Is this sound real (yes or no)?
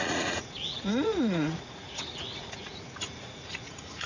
no